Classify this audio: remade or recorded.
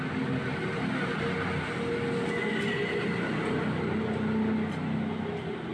recorded